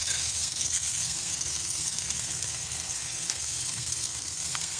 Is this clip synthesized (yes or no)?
yes